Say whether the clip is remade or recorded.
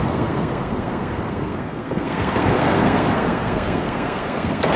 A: remade